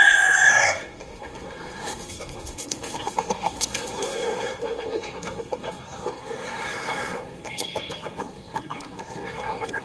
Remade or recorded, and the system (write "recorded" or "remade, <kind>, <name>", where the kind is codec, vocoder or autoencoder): remade, codec, SNAC